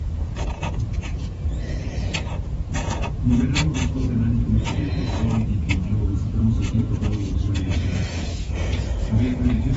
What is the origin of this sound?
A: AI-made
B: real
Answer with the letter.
A